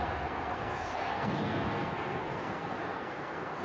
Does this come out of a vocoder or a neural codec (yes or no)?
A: yes